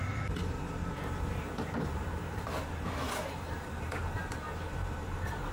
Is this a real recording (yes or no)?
no